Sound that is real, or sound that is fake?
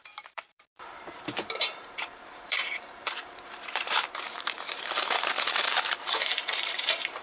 fake